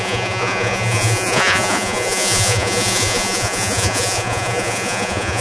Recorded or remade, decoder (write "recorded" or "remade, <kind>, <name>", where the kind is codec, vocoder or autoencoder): remade, vocoder, Vocos